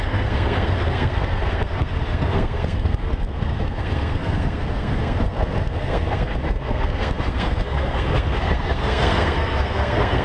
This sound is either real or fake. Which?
fake